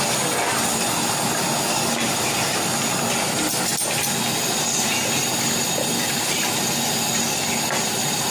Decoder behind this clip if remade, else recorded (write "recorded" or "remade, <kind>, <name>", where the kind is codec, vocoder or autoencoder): recorded